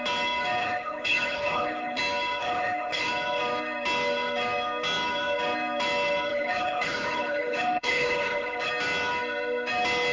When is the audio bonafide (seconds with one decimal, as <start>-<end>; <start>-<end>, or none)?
0.0-0.6; 2.0-2.4; 3.1-6.3; 8.7-10.1

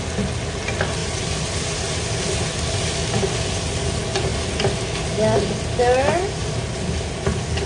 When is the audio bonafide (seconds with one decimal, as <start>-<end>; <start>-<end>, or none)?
0.0-7.7

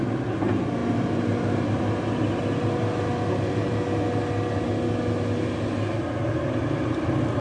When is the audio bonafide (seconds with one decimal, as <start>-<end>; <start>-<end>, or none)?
0.0-7.4

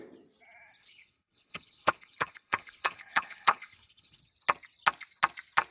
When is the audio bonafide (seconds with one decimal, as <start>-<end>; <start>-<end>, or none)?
0.0-0.8; 4.2-5.7

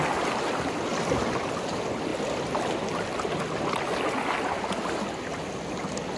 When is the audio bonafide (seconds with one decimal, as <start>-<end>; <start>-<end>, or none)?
0.0-6.2

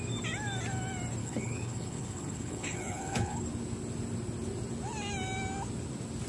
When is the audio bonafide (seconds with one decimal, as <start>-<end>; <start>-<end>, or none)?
0.0-1.2; 3.4-6.3

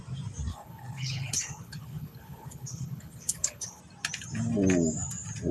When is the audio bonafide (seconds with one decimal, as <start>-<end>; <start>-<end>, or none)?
0.0-0.5; 3.8-5.5

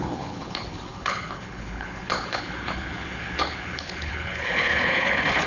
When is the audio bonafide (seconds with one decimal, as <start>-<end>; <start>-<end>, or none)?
none